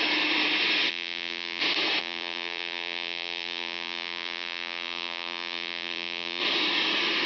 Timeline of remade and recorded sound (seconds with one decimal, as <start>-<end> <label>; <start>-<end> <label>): 0.0-0.9 recorded; 0.9-1.6 remade; 1.6-2.0 recorded; 2.0-6.4 remade; 6.4-7.3 recorded